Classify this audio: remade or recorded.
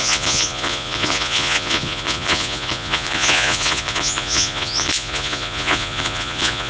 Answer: remade